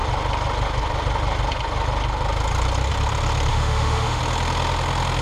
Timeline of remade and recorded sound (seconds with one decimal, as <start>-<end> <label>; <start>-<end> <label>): 0.0-3.5 recorded; 3.5-4.2 remade; 4.2-5.2 recorded